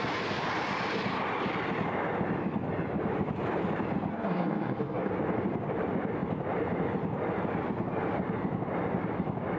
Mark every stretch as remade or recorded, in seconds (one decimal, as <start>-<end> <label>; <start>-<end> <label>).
0.0-4.1 recorded; 4.1-5.1 remade; 5.1-9.6 recorded